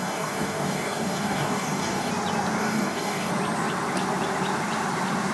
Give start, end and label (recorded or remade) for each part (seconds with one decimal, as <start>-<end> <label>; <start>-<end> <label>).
0.0-2.1 remade; 2.1-2.6 recorded; 2.6-3.3 remade; 3.3-5.3 recorded